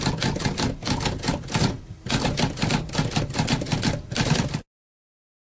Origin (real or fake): real